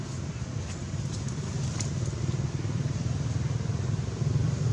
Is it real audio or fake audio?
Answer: fake